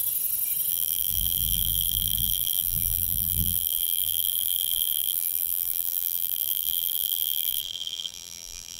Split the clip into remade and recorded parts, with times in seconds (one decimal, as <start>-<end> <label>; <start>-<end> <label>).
0.0-0.7 recorded; 0.7-8.8 remade